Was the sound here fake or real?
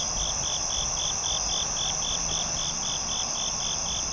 fake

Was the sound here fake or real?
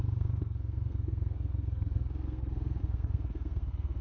fake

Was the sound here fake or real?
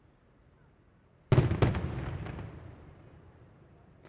real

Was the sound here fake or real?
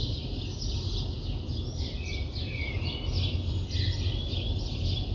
real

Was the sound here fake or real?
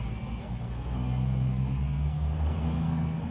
fake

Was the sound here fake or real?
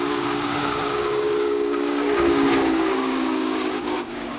fake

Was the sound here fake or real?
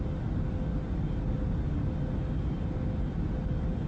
real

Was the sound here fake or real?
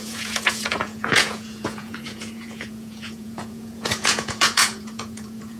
fake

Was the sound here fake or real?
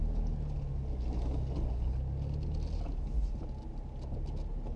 real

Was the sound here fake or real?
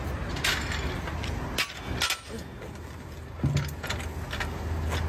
real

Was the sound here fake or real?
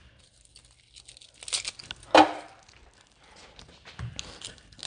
real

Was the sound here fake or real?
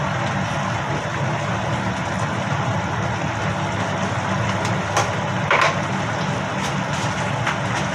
real